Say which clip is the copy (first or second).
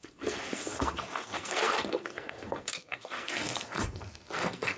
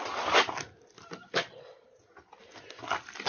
first